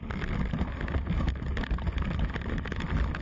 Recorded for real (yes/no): yes